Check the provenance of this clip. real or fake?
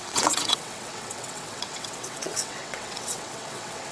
fake